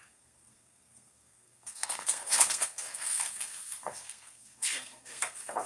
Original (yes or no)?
no